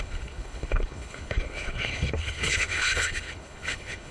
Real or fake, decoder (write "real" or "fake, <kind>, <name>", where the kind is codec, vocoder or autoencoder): fake, codec, HILCodec